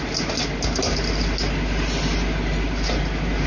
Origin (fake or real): real